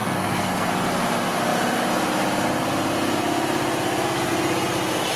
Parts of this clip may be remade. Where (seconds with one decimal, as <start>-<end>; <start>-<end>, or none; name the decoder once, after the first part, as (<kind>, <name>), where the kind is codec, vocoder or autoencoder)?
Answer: 0.0-0.7 (codec, SNAC)